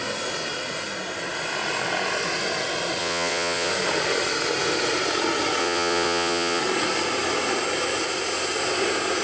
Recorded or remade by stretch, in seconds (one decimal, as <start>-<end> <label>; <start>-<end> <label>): 0.0-3.0 recorded; 3.0-3.7 remade; 3.7-5.6 recorded; 5.6-6.6 remade; 6.6-9.2 recorded